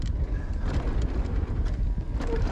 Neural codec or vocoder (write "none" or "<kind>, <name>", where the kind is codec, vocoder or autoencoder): none